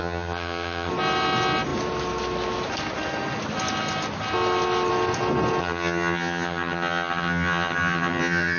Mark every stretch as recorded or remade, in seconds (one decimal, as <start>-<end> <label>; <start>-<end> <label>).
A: 0.0-0.9 remade; 0.9-5.6 recorded; 5.6-8.6 remade